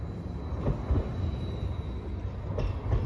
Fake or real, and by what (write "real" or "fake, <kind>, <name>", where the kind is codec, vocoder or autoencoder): real